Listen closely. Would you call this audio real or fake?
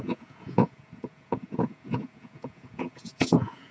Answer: fake